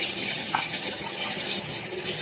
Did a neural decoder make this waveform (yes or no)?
yes